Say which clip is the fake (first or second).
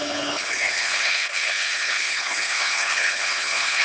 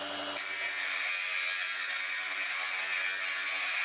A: first